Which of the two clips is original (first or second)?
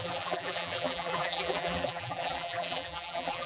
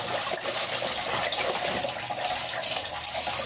second